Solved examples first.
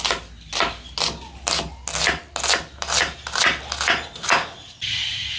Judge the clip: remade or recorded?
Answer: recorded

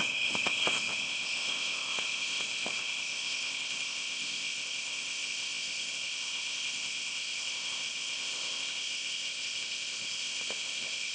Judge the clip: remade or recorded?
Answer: remade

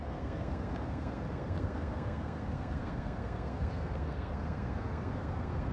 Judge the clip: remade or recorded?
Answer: remade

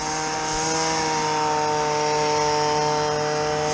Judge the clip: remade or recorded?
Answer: recorded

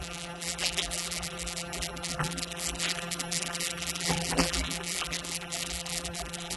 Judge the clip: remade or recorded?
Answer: remade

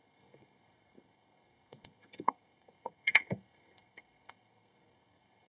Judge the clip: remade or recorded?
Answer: remade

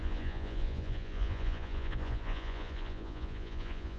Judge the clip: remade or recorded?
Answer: remade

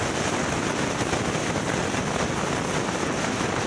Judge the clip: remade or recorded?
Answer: recorded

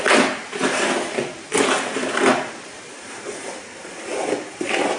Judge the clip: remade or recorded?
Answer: recorded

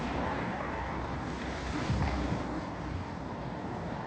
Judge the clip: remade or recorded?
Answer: remade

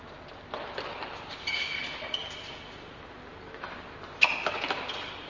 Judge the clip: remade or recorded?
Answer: recorded